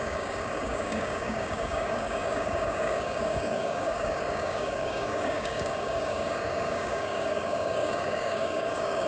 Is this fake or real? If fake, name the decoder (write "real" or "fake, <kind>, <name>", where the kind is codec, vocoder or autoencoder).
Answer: fake, codec, DAC